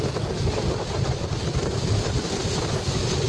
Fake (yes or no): no